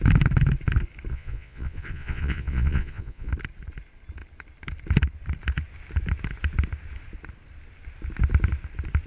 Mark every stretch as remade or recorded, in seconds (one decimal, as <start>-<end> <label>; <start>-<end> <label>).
0.0-1.1 recorded; 1.1-3.3 remade; 3.3-9.1 recorded